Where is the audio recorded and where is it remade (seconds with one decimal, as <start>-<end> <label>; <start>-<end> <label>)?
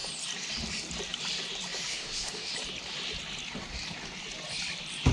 0.0-1.9 recorded; 1.9-2.5 remade; 2.5-5.1 recorded